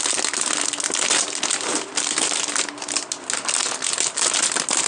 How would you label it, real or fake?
real